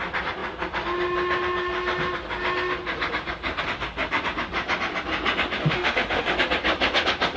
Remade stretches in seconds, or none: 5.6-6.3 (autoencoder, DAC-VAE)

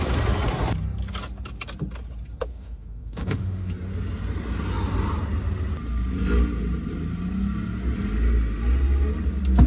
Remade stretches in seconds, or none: 2.5-3.7 (autoencoder, DAC-VAE)

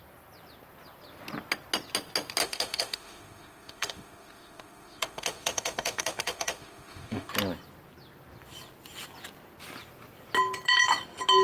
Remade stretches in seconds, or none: 2.4-7.3 (autoencoder, DAC-VAE)

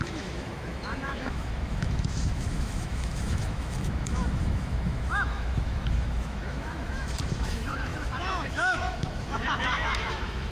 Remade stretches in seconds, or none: 0.0-10.5 (autoencoder, DAC-VAE)

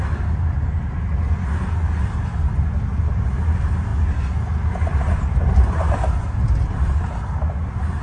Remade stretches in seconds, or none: none

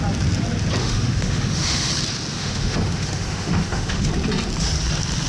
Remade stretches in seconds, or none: 0.8-1.9 (autoencoder, DAC-VAE); 2.3-4.1

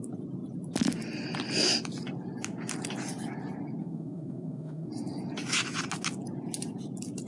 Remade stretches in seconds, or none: 3.8-4.9 (autoencoder, DAC-VAE)